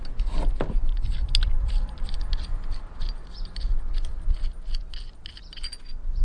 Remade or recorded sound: recorded